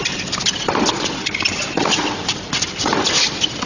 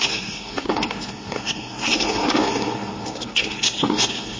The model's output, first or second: second